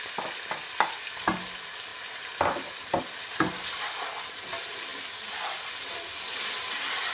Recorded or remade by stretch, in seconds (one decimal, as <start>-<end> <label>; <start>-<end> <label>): 0.0-7.1 recorded